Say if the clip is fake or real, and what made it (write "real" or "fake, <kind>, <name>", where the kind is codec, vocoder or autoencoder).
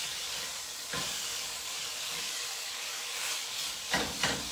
fake, codec, DAC